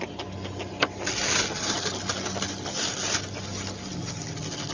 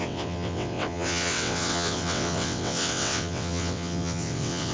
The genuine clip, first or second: first